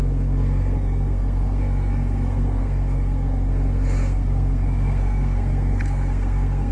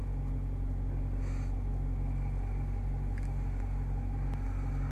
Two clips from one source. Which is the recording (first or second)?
second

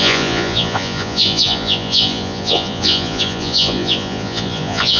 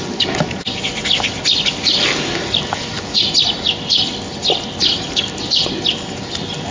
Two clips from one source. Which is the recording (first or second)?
second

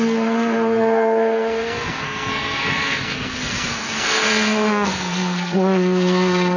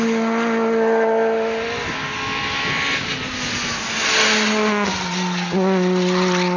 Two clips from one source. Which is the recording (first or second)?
second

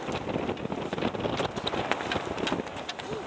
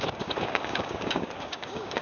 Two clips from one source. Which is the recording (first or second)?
first